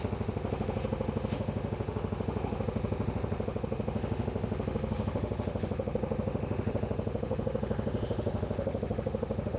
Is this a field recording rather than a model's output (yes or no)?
no